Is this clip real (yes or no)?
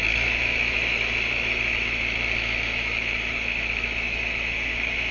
no